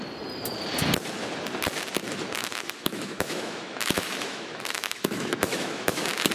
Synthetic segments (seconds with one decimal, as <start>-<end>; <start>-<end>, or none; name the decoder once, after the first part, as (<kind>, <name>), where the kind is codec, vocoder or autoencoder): 2.4-6.3 (autoencoder, DAC-VAE)